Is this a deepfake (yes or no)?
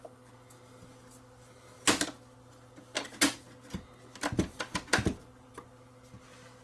no